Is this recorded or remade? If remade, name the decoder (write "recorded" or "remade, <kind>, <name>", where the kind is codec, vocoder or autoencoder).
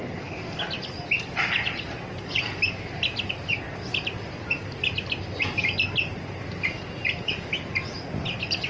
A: recorded